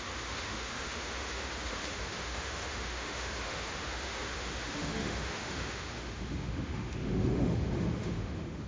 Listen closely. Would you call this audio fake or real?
fake